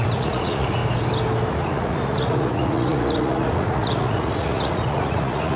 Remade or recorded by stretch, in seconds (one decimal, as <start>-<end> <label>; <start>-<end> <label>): 0.0-0.8 remade; 0.8-1.5 recorded; 1.5-5.6 remade